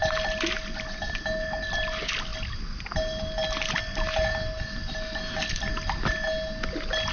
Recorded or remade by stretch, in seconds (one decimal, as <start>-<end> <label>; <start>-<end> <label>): 0.0-7.1 recorded